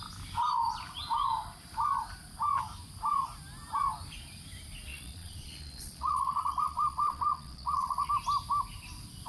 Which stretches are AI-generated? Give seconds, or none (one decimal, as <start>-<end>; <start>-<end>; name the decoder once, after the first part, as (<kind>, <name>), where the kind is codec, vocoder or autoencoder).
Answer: 4.9-8.1 (vocoder, Vocos)